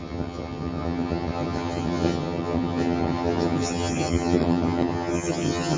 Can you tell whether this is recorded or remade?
remade